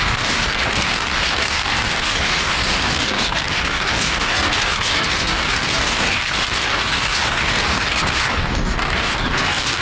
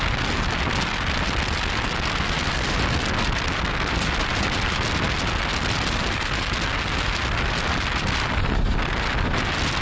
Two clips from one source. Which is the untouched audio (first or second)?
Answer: second